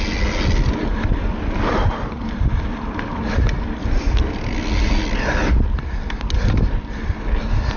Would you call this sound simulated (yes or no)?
no